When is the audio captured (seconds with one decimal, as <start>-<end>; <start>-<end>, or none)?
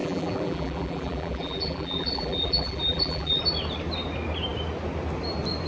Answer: 3.4-5.7